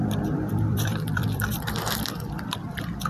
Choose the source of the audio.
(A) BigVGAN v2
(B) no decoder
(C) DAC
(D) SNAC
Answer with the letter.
A